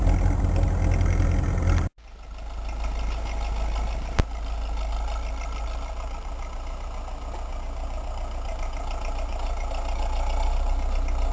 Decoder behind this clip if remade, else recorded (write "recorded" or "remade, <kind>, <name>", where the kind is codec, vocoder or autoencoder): recorded